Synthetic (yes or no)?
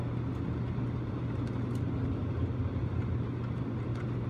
no